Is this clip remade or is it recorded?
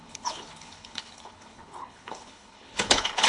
remade